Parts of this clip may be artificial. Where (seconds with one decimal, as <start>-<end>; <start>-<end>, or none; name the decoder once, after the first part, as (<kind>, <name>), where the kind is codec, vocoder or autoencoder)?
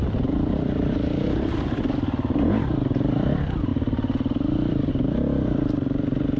0.0-6.4 (vocoder, BigVGAN v2)